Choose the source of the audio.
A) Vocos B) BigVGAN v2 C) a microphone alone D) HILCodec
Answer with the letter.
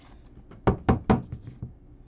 C